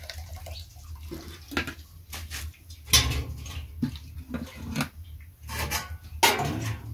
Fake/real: real